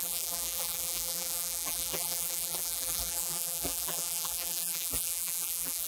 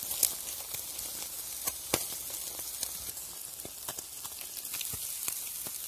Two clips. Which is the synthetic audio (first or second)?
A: first